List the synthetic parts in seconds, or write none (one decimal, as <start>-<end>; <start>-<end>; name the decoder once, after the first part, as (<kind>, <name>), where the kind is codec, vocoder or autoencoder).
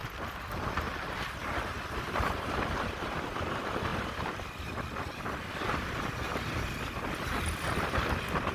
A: 2.0-6.3 (vocoder, BigVGAN v2); 7.2-8.5